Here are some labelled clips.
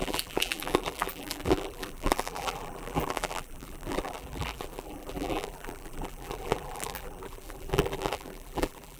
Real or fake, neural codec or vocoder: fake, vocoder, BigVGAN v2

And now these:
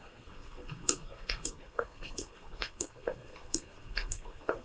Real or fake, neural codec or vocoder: fake, codec, SNAC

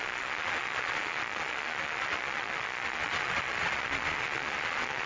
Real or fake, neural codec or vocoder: fake, vocoder, Vocos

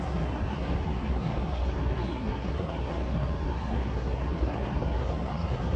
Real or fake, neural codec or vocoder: fake, codec, SNAC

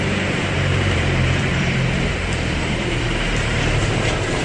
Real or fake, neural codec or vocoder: fake, vocoder, BigVGAN v2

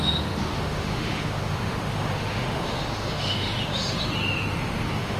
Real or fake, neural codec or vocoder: fake, autoencoder, DAC-VAE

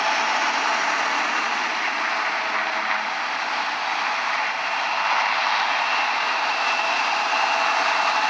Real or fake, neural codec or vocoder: real